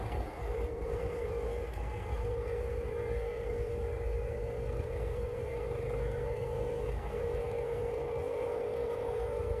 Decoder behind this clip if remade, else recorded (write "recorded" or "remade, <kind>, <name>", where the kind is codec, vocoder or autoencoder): remade, codec, SNAC